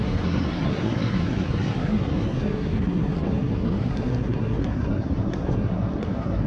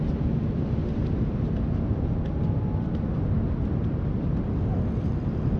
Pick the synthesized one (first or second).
first